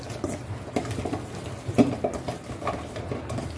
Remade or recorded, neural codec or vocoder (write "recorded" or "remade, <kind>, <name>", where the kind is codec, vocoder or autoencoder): recorded